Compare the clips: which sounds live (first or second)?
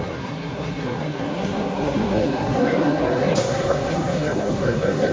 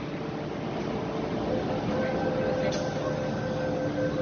second